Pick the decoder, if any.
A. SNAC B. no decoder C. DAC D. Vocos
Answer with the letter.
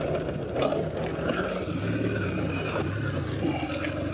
B